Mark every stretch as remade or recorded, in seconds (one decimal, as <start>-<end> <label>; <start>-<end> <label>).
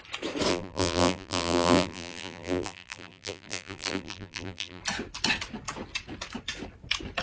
0.0-0.5 recorded; 0.5-4.8 remade; 4.8-7.2 recorded